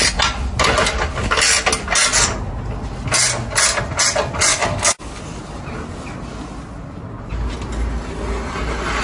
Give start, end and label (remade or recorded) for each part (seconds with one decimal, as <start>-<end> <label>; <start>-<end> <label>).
0.0-4.5 recorded; 4.5-5.2 remade; 5.2-9.0 recorded